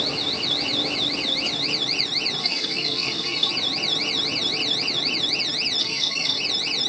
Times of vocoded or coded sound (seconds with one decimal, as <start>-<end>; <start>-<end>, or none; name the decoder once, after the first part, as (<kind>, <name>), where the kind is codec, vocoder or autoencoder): 2.4-3.5 (codec, SNAC); 5.8-6.4